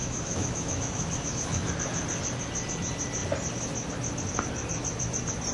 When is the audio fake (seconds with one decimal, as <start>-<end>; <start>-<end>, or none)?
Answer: 0.0-1.7